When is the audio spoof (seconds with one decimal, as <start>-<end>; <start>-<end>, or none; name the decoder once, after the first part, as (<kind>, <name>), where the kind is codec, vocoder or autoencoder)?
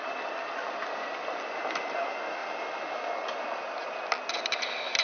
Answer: none